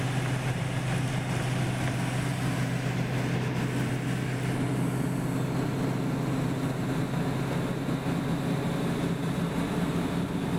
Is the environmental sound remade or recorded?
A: recorded